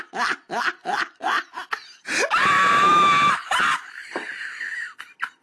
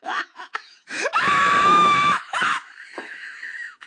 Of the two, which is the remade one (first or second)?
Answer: second